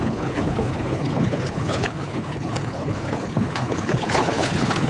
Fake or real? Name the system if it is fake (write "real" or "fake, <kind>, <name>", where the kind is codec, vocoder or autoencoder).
fake, codec, HILCodec